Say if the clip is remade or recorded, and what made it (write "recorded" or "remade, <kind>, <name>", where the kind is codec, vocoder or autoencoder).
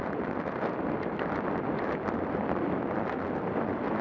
recorded